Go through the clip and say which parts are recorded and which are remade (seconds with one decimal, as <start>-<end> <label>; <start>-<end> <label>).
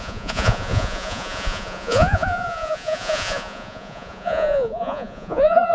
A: 0.0-5.7 remade